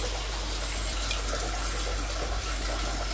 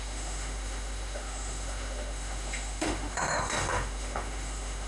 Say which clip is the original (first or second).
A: first